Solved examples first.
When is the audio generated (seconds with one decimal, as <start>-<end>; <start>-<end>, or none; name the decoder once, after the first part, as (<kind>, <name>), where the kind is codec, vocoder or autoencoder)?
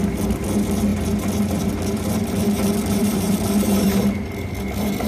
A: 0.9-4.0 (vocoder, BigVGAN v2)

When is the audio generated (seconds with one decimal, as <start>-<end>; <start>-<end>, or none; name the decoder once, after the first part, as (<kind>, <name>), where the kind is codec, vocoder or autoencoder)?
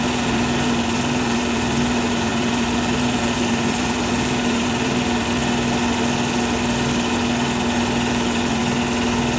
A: 0.0-5.4 (vocoder, BigVGAN v2); 8.1-8.6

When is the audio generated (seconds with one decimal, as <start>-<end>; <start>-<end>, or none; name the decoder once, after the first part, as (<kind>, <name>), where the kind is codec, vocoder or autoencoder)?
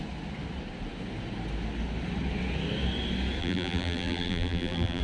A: 3.4-5.0 (vocoder, BigVGAN v2)